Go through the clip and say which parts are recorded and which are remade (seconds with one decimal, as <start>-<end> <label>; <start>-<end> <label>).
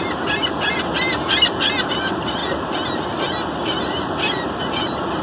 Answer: 0.0-5.2 recorded